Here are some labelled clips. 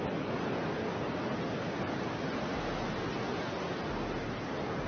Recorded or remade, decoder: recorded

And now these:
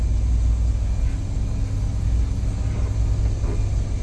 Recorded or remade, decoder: recorded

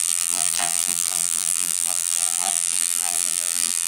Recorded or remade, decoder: remade, vocoder, BigVGAN v2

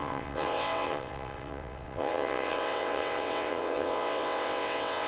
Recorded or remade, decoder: remade, vocoder, WaveNeXt